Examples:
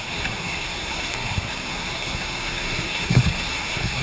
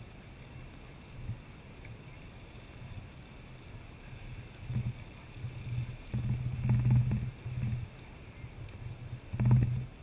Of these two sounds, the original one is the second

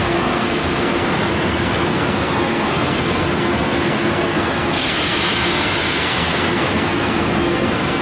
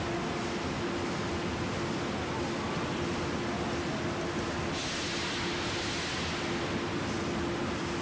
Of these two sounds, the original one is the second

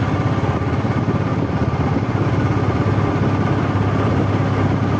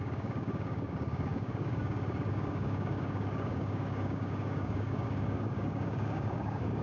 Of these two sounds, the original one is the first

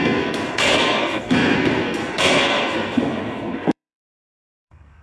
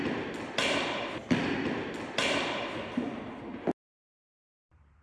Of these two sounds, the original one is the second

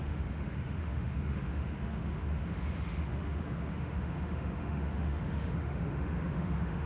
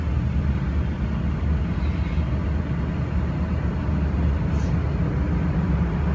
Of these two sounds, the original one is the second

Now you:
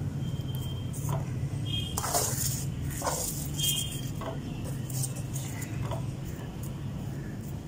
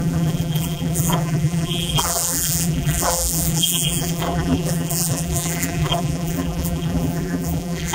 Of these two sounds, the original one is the first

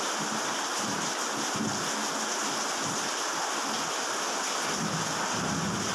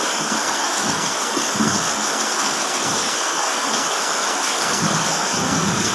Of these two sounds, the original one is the first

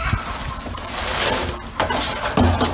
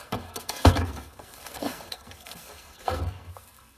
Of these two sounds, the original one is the first